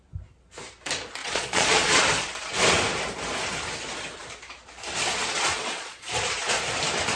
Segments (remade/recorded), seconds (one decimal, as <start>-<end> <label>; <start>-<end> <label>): 0.0-1.2 recorded; 1.2-2.0 remade; 2.0-5.5 recorded; 5.5-6.1 remade; 6.1-7.2 recorded